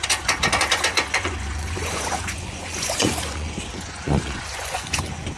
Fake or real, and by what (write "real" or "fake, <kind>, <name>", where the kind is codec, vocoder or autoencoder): fake, vocoder, Vocos